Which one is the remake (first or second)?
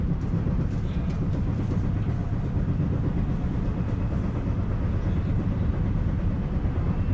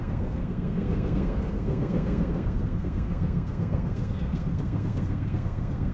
second